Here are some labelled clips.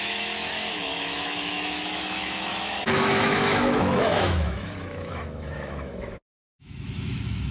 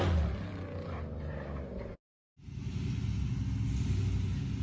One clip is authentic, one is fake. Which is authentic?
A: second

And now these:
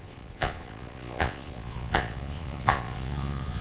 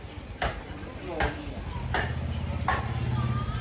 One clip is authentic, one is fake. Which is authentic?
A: second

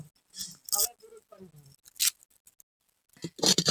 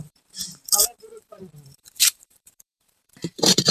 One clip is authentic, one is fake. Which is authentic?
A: first